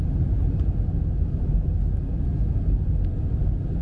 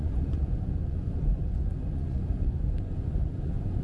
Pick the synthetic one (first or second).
second